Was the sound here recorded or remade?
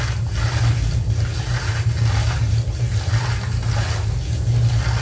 recorded